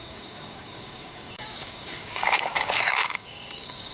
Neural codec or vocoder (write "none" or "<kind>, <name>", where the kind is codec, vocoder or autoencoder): codec, DAC